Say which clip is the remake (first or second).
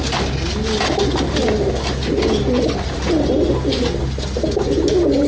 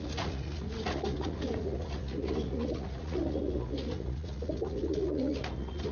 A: second